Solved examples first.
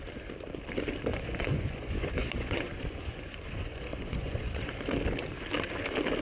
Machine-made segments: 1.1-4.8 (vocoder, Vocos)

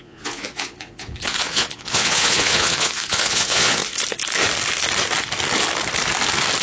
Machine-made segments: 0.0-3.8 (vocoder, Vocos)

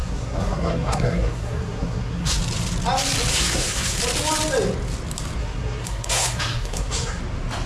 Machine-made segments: 0.0-2.4 (codec, SNAC); 3.3-4.0; 5.4-7.2

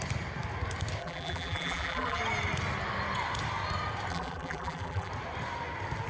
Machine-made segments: 1.0-2.2 (vocoder, BigVGAN v2); 4.1-5.1

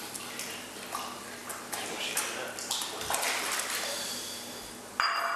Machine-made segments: none

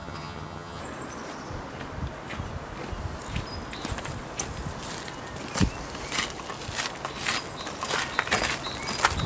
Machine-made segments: 0.0-0.8 (vocoder, HiFi-GAN)

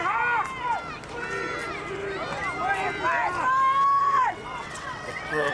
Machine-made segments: 4.0-5.5 (vocoder, WaveNeXt)